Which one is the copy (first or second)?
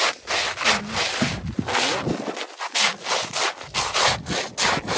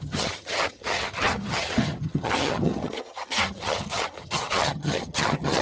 second